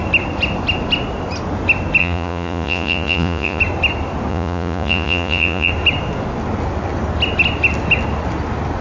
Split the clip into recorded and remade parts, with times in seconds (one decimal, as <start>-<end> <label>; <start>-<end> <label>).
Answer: 0.0-2.0 recorded; 2.0-3.6 remade; 3.6-4.3 recorded; 4.3-5.7 remade; 5.7-8.8 recorded